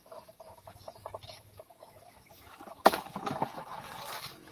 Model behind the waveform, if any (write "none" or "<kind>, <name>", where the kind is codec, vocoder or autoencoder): codec, DAC